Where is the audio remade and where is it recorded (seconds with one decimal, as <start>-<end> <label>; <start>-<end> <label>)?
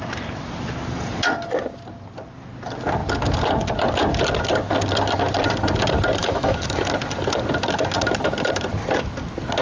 0.0-6.2 recorded; 6.2-6.8 remade; 6.8-9.6 recorded